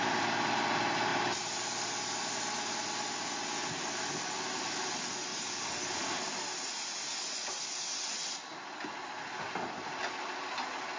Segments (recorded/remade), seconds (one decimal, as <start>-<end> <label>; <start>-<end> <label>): 0.0-11.0 recorded